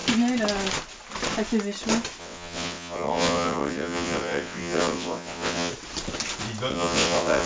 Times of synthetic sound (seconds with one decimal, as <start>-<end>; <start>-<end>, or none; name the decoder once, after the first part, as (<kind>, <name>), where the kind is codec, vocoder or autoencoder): 2.2-5.7 (vocoder, WaveNeXt); 6.7-7.5